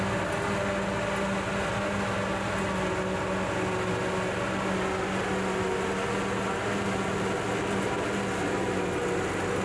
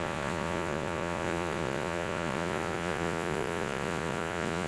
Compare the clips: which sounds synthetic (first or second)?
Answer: second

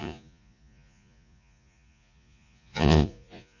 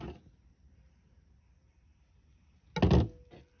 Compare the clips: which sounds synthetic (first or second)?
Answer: first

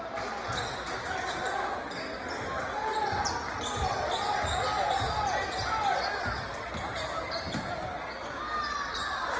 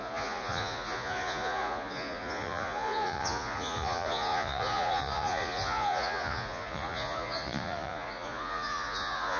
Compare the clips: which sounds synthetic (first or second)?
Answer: second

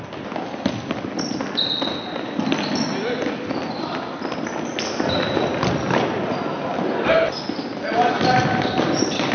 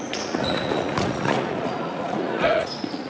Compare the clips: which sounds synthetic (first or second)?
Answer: second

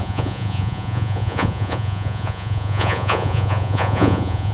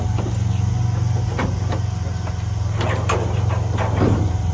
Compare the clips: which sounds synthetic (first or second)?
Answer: first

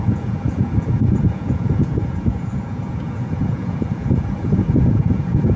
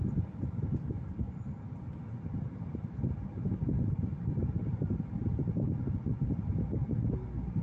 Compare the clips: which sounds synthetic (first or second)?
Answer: first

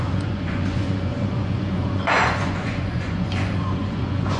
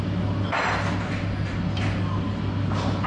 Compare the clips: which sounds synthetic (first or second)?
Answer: first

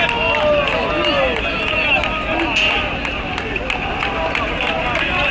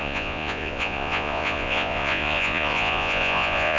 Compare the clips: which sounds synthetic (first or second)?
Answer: second